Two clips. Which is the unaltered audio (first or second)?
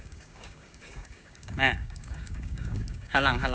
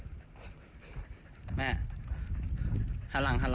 second